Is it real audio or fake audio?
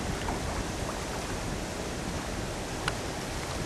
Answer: real